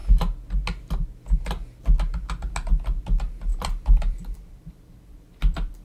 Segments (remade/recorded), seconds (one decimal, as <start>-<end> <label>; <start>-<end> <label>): 0.0-3.0 recorded; 3.0-5.8 remade